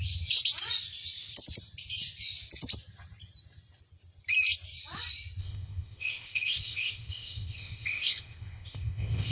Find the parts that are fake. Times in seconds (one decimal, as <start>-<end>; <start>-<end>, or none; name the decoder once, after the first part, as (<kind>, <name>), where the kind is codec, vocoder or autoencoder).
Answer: 5.4-9.3 (codec, ZipCodec)